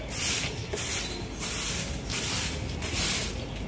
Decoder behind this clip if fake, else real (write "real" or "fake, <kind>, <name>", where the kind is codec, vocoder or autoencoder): real